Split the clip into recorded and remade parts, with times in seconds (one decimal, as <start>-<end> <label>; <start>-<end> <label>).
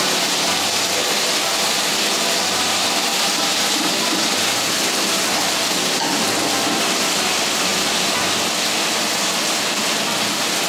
0.0-3.1 recorded; 3.1-4.6 remade; 4.6-10.7 recorded